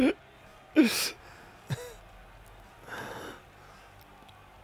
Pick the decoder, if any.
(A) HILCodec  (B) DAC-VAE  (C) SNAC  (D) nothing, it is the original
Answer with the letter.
D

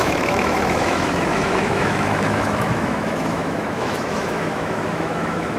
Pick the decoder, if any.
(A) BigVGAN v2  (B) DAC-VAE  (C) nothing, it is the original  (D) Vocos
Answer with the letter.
B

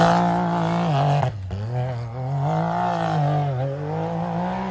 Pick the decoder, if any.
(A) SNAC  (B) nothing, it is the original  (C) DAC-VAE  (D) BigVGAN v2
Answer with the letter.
B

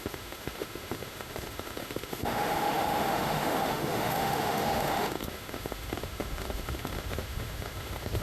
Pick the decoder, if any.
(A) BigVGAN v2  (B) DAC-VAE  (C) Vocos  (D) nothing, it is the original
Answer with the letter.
B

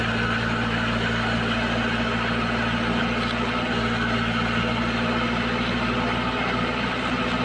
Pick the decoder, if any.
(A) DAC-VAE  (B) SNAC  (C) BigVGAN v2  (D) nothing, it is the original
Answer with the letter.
D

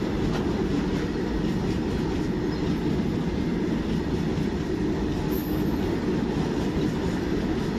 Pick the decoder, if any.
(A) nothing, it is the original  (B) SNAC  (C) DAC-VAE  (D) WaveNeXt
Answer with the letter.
A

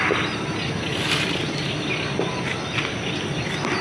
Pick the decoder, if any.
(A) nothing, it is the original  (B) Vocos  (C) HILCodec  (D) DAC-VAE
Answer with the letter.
A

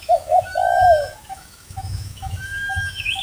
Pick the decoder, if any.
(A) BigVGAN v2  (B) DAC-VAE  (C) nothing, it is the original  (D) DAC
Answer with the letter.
B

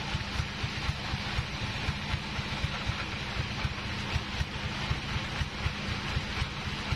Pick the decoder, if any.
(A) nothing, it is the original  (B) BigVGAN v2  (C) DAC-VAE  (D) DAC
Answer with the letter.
A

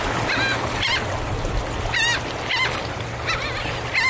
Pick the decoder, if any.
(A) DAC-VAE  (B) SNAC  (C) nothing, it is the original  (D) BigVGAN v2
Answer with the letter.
C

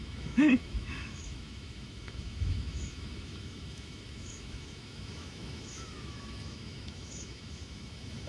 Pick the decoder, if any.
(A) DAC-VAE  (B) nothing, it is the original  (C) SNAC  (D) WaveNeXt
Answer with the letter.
A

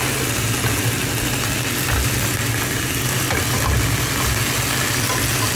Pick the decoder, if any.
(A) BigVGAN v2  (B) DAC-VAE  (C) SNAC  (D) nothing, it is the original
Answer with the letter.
D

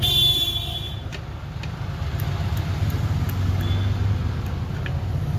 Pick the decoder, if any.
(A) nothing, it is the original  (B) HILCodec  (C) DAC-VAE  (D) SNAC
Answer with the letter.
A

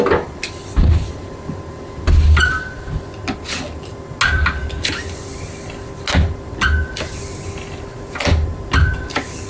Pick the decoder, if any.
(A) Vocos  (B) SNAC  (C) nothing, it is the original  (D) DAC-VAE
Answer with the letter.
C